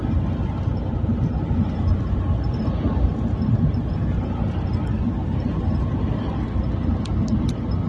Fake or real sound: real